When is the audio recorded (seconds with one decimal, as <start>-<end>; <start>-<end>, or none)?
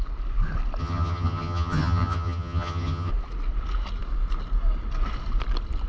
0.0-0.8; 3.1-5.9